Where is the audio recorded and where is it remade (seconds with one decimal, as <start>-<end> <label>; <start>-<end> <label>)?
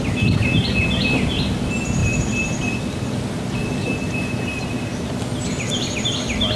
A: 0.0-6.6 recorded